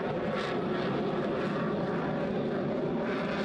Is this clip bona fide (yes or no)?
yes